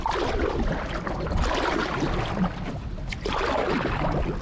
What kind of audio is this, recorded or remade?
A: recorded